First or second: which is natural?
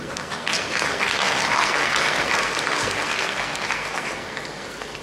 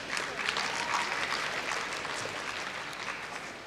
second